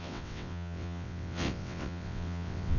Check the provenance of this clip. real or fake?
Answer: fake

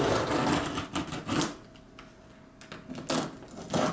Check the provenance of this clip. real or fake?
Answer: real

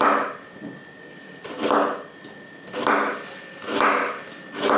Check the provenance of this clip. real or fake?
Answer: real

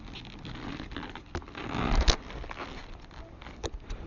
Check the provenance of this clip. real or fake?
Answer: real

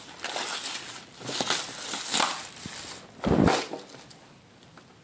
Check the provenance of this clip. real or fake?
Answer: real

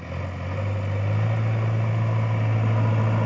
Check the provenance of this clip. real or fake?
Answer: real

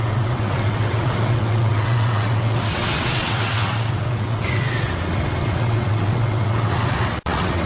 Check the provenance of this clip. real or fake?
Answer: fake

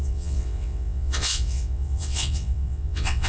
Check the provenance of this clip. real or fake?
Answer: fake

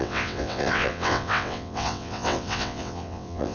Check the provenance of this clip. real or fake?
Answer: fake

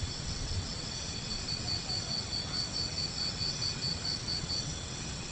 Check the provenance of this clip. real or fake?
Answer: fake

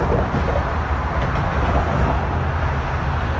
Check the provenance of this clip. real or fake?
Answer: real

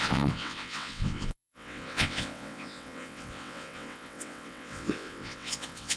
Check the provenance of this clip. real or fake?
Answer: fake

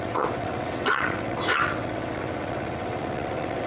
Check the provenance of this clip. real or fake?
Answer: fake